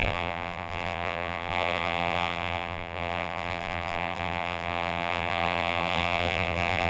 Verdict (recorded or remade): remade